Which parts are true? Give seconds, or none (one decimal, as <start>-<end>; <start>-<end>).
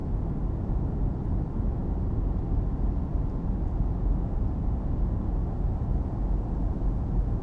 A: 1.4-7.4